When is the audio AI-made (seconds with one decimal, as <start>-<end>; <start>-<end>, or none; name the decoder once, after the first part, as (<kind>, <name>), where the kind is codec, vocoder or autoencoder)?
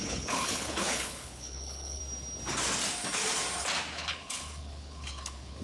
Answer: 0.0-2.0 (codec, HILCodec); 3.9-5.6